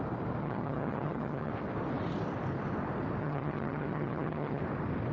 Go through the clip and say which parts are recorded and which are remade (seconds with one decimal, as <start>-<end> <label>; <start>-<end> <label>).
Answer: 0.0-0.4 recorded; 0.4-1.5 remade; 1.5-3.2 recorded; 3.2-4.6 remade; 4.6-5.1 recorded